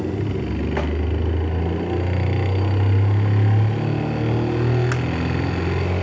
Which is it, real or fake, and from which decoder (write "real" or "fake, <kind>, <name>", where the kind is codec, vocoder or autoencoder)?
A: real